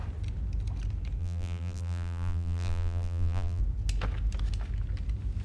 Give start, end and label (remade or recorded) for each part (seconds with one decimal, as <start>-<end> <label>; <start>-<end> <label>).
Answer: 0.0-1.2 recorded; 1.2-3.6 remade; 3.6-5.4 recorded